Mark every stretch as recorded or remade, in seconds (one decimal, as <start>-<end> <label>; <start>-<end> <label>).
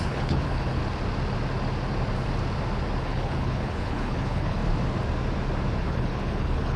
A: 0.0-0.8 remade; 0.8-3.0 recorded; 3.0-4.6 remade; 4.6-5.8 recorded; 5.8-6.8 remade